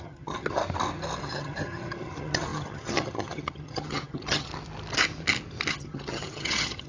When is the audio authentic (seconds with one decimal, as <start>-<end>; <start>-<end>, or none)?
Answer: 0.6-1.2; 4.5-5.7